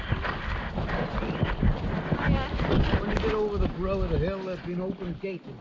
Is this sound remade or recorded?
recorded